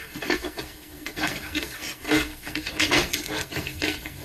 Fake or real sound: fake